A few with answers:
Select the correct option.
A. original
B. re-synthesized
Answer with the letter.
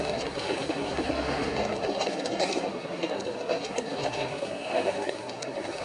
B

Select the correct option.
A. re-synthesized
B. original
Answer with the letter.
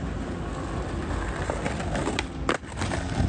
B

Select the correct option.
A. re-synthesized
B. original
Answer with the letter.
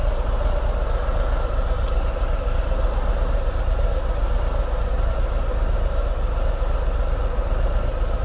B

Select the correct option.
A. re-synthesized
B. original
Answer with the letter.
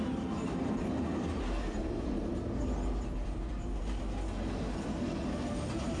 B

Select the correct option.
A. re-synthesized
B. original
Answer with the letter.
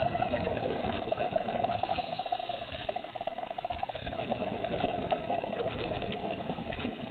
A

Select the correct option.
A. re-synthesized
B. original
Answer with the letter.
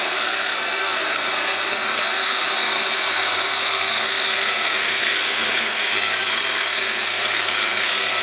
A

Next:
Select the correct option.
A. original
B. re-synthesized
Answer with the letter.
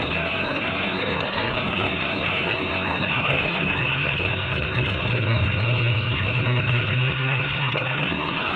B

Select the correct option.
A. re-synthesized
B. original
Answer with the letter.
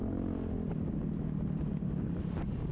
B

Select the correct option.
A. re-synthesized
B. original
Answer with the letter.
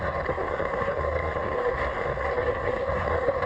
A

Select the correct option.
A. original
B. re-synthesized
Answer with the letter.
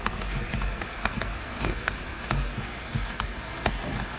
B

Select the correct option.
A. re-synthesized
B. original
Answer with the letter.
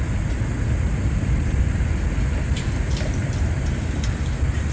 B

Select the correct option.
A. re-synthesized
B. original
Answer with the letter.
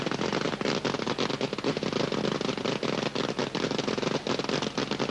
B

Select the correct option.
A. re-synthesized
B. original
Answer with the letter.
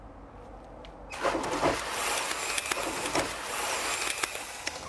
B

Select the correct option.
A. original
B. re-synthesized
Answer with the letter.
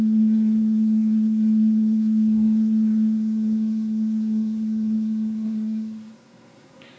B